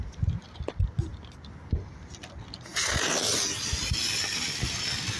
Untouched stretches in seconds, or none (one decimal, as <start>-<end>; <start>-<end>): 0.0-5.2